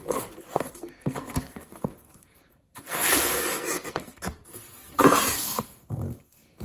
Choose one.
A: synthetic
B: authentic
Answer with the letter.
A